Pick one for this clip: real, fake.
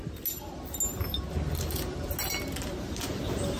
real